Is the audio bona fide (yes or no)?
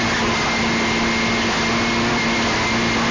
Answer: yes